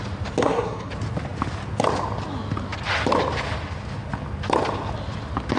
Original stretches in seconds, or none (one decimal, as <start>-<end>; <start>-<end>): 0.0-0.4; 0.9-5.6